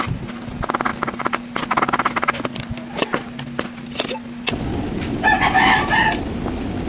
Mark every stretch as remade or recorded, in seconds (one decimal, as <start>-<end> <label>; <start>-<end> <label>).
0.0-6.9 recorded